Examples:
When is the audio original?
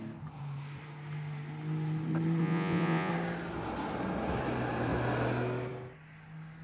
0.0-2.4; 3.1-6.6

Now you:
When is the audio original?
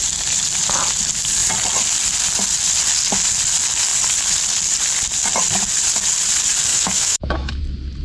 0.0-6.7; 7.6-8.0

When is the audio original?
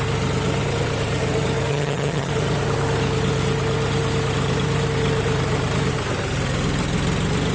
0.0-1.7; 2.3-7.5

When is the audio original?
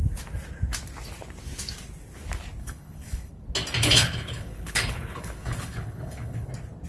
0.0-2.6; 3.3-3.8; 6.5-6.9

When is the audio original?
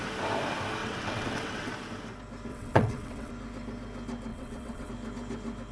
0.0-0.8; 1.7-2.5; 3.3-4.3; 4.9-5.7